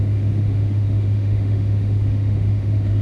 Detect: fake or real fake